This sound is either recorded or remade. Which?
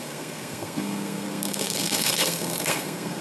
remade